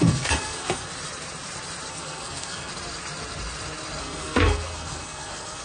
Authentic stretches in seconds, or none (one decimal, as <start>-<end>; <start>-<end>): 0.9-1.9; 2.7-4.0